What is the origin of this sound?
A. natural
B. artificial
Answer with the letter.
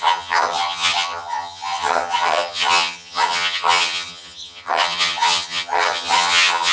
B